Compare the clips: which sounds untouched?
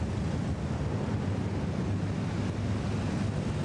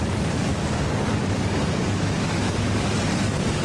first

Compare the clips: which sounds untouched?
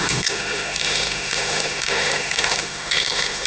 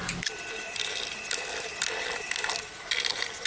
second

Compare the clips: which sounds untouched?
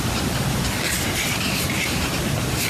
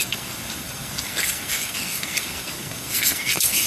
first